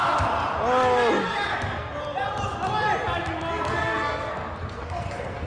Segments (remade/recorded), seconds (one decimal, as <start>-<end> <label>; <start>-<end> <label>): 0.0-1.2 recorded; 1.2-1.9 remade; 1.9-3.8 recorded; 3.8-5.5 remade